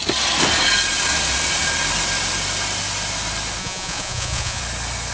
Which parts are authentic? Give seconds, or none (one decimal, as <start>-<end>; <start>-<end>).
0.0-3.6; 4.6-5.1